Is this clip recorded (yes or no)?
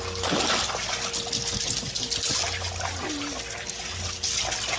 yes